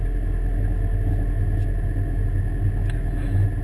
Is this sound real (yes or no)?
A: yes